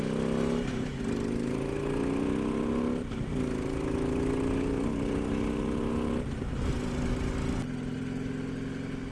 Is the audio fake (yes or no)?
no